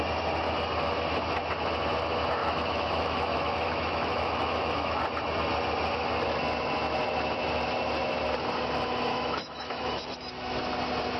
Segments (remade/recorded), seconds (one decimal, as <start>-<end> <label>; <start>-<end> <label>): 0.0-2.4 recorded; 2.4-5.0 remade; 5.0-9.1 recorded; 9.1-10.1 remade; 10.1-11.2 recorded